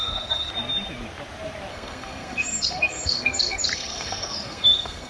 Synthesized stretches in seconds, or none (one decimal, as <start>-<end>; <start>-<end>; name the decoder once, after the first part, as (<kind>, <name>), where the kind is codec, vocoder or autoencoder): 0.0-0.5 (codec, SNAC); 1.7-5.1